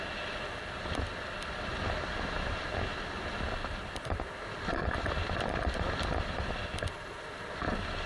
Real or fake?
real